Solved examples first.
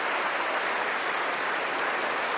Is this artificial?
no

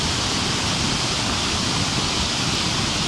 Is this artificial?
yes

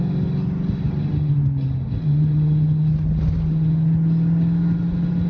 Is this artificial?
no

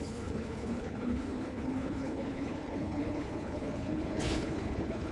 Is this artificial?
yes